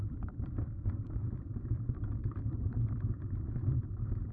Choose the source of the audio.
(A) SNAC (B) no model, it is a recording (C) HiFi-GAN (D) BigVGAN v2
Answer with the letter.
D